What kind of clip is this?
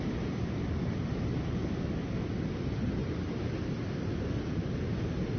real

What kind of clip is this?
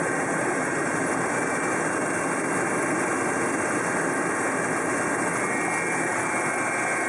real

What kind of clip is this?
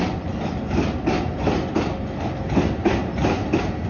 real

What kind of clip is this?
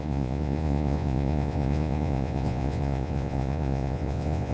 fake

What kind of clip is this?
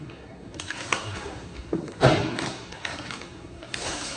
fake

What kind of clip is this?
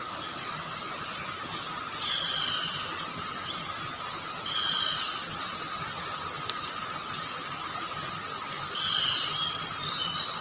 real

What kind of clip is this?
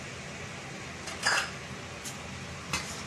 real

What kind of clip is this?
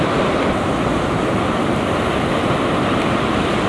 real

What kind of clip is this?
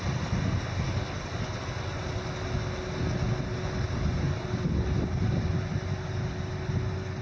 real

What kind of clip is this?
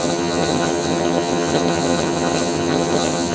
fake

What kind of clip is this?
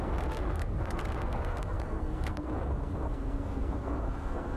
fake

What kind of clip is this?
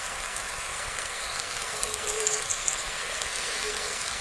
fake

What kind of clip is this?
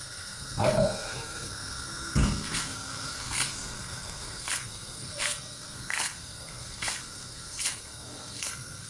fake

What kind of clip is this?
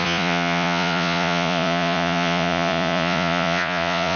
fake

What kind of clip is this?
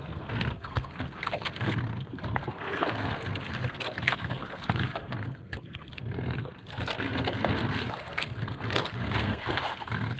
fake